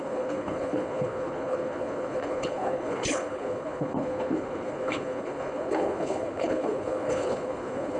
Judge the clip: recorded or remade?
remade